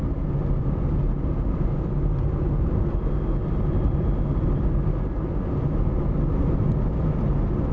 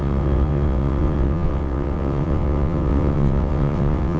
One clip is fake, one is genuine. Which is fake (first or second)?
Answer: second